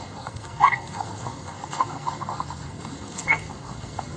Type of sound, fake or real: fake